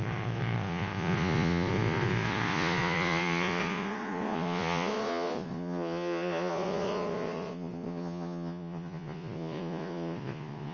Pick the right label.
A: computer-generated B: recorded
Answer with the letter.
A